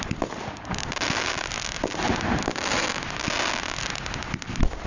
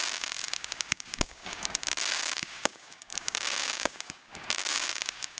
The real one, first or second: first